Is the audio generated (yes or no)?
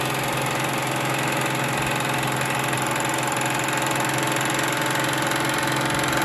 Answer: no